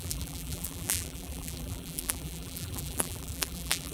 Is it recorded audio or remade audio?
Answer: remade